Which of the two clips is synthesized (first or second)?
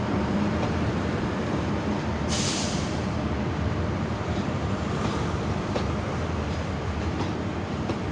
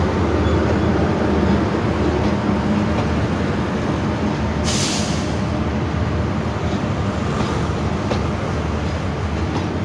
first